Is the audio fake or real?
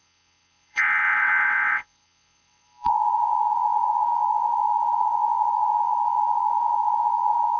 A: fake